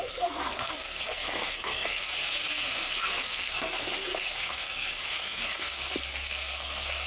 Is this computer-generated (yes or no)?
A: yes